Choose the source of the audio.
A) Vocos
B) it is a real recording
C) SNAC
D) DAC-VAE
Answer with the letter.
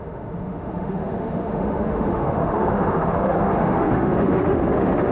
D